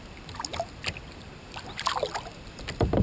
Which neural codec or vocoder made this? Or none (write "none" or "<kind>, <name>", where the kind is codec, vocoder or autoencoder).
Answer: none